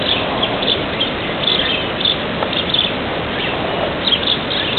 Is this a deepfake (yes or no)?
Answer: no